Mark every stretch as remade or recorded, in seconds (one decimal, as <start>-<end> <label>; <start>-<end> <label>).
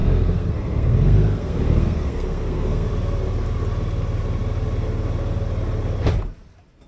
0.0-2.9 remade; 2.9-6.9 recorded